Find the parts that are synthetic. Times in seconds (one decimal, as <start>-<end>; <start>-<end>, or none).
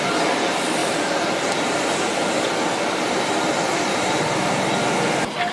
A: 0.8-2.3; 3.7-4.5